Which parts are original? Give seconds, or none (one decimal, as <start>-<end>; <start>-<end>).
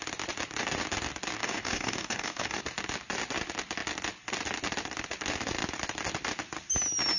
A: 0.0-1.4; 2.6-7.2